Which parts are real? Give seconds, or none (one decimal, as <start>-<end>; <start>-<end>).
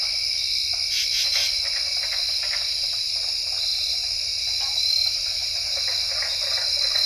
0.0-1.4; 3.2-3.7; 4.9-7.1